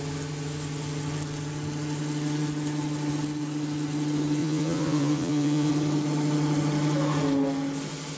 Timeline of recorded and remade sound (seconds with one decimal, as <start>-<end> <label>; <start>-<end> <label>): 0.0-4.4 recorded; 4.4-5.7 remade; 5.7-8.2 recorded